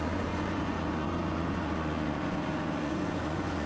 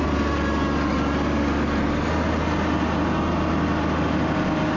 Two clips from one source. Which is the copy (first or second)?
first